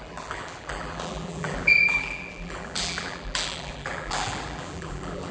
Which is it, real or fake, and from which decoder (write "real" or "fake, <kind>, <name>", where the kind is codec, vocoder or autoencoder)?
fake, vocoder, BigVGAN v2